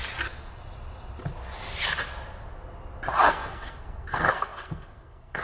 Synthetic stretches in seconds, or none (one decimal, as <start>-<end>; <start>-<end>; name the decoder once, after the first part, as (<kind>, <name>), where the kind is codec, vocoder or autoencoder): 3.2-5.4 (codec, SNAC)